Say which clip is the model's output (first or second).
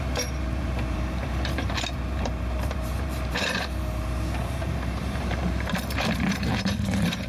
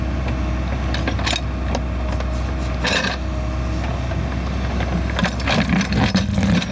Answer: first